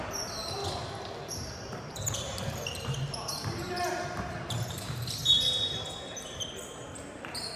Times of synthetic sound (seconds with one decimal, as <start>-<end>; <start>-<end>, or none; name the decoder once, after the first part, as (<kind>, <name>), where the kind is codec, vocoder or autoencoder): 0.0-0.6 (vocoder, BigVGAN v2); 1.4-5.2; 6.3-7.6